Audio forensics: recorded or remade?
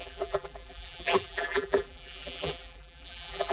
remade